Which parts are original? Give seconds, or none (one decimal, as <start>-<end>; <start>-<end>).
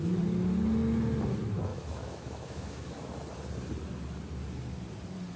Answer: 0.0-1.7; 3.1-5.4